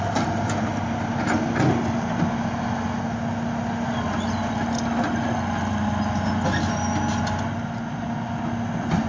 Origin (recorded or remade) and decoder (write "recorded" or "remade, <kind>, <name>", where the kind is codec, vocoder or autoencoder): recorded